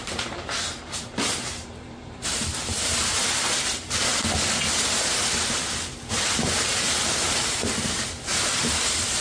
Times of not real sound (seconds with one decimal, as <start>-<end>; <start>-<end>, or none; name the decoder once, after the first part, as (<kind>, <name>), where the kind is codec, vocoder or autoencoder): 0.0-4.1 (vocoder, BigVGAN v2); 4.8-9.2